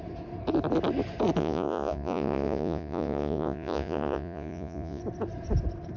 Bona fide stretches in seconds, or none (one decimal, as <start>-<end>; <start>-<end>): 0.0-1.4; 5.0-6.0